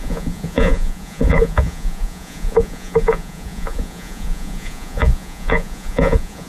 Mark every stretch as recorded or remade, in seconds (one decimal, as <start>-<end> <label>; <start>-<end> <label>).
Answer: 0.0-6.5 remade